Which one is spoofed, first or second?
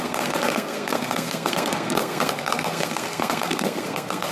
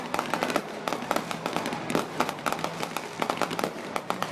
first